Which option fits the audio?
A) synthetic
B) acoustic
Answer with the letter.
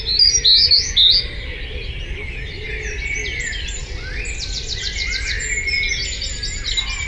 B